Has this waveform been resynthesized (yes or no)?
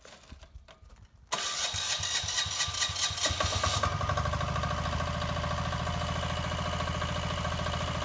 no